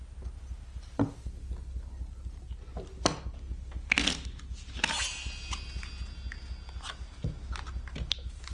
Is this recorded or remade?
recorded